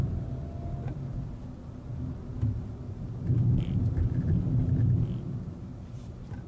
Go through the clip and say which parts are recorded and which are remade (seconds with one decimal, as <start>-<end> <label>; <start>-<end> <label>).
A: 0.0-5.7 recorded; 5.7-6.5 remade